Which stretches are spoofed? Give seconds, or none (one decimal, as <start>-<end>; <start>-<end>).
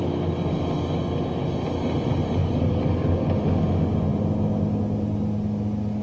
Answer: 2.4-3.2